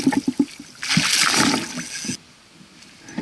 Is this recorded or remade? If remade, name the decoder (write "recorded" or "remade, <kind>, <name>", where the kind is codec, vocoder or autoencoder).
recorded